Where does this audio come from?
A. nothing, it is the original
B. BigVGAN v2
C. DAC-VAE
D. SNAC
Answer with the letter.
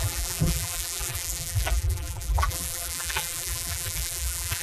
B